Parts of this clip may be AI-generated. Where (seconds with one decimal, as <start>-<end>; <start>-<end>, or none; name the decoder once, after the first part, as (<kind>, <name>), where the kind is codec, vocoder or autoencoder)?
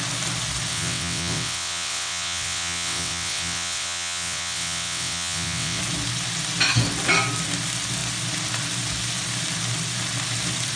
0.7-5.8 (vocoder, WaveNeXt)